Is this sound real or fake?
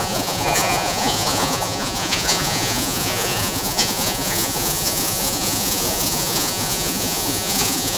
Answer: fake